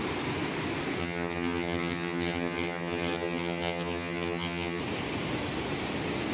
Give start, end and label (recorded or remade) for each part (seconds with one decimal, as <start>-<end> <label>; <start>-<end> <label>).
0.0-1.0 recorded; 1.0-4.8 remade; 4.8-6.3 recorded